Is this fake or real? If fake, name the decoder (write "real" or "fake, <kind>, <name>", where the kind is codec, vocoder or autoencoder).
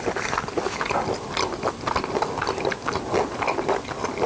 real